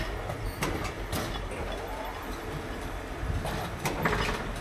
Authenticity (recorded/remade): recorded